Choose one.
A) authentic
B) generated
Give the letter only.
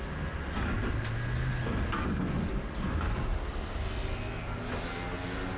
A